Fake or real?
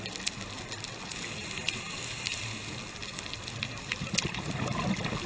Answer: real